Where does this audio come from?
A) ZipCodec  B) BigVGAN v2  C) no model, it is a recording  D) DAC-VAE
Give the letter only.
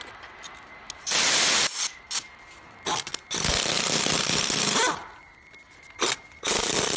C